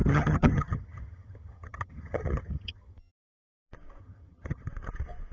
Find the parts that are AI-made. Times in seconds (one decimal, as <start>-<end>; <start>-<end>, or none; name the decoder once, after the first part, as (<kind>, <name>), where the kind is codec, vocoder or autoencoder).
0.0-3.1 (vocoder, HiFi-GAN); 4.0-4.7